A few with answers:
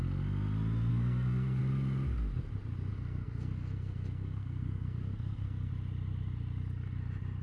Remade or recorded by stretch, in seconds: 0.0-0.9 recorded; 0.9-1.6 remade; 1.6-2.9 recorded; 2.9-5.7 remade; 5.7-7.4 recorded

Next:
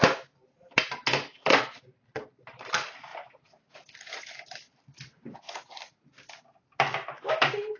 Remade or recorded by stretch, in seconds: 0.0-1.1 recorded; 1.1-2.3 remade; 2.3-7.8 recorded

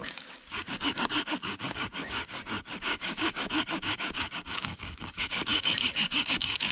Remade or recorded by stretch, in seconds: 0.0-6.7 remade

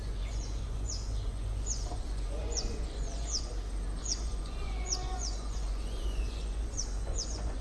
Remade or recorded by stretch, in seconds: 0.0-3.5 remade; 3.5-4.0 recorded; 4.0-7.6 remade

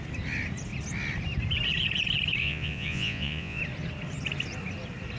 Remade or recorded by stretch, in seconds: 0.0-2.4 recorded; 2.4-3.6 remade; 3.6-5.2 recorded

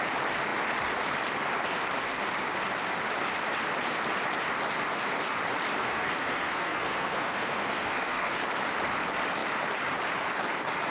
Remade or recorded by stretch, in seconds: 0.0-5.8 recorded; 5.8-8.3 remade; 8.3-10.9 recorded

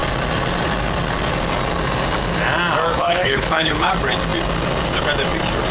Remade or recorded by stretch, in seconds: 0.0-3.0 recorded; 3.0-3.9 remade; 3.9-5.7 recorded

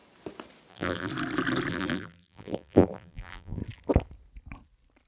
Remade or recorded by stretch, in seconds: 0.0-0.7 recorded; 0.7-1.1 remade; 1.1-1.7 recorded; 1.7-3.6 remade; 3.6-5.1 recorded